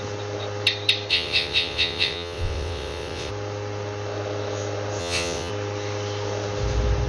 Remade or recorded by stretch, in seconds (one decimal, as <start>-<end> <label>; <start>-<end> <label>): 0.0-1.1 recorded; 1.1-3.3 remade; 3.3-5.0 recorded; 5.0-5.5 remade; 5.5-7.1 recorded